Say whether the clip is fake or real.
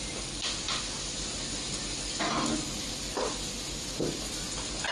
real